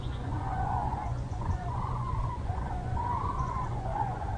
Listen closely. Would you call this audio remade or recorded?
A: remade